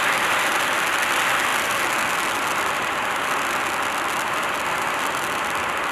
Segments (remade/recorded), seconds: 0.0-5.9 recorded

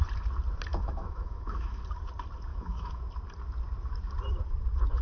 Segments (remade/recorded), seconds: 0.0-0.7 recorded; 0.7-1.8 remade; 1.8-2.5 recorded; 2.5-3.0 remade; 3.0-5.0 recorded

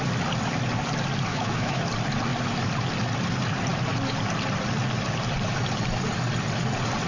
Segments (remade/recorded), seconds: 0.0-1.3 recorded; 1.3-1.8 remade; 1.8-7.1 recorded

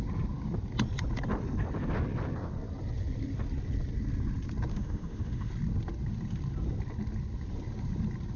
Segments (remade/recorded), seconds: 0.0-4.7 recorded; 4.7-5.5 remade; 5.5-8.4 recorded

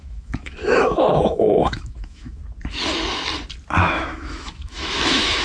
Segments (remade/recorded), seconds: 0.0-2.4 remade; 2.4-3.8 recorded; 3.8-5.4 remade

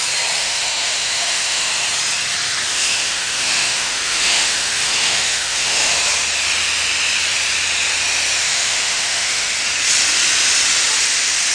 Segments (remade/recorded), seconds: 0.0-0.4 recorded; 0.4-1.7 remade; 1.7-2.7 recorded; 2.7-5.9 remade; 5.9-8.4 recorded; 8.4-9.5 remade; 9.5-11.5 recorded

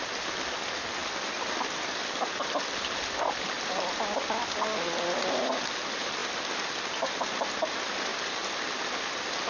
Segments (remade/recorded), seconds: 0.0-9.5 recorded